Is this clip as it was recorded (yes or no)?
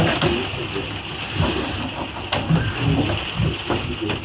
yes